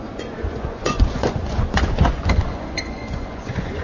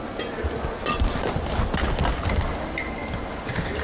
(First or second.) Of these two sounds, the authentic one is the second